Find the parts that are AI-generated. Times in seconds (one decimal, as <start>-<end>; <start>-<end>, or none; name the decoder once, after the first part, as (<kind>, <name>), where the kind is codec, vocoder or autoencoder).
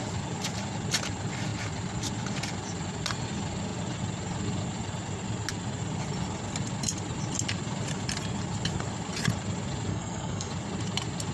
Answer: 9.9-10.5 (codec, SNAC)